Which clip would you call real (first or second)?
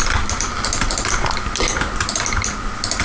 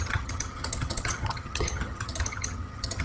first